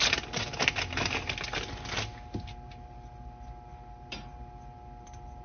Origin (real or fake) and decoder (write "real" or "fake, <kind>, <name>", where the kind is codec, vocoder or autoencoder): real